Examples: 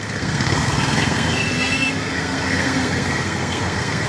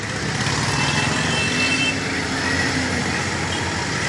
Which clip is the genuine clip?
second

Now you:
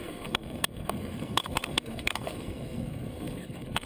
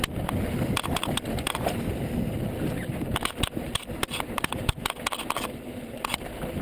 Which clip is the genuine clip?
second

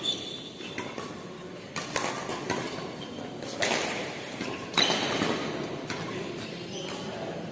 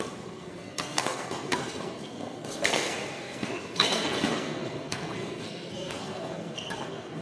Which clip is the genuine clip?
first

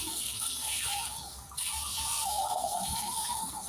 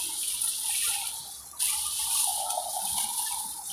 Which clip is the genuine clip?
second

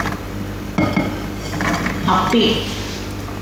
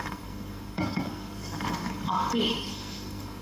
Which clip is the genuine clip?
first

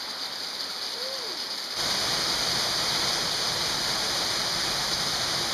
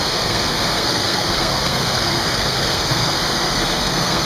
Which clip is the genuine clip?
first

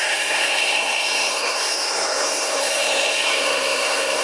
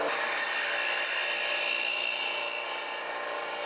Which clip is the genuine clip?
second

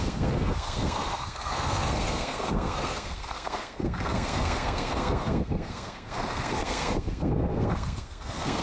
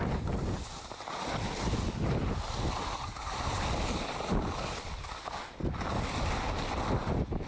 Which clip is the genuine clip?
second